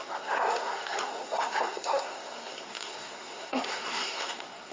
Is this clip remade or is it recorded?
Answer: remade